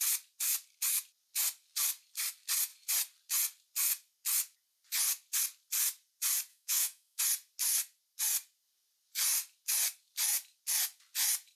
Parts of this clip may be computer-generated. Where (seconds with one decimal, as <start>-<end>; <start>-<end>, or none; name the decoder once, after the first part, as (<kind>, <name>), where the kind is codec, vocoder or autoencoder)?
6.5-7.2 (autoencoder, DAC-VAE)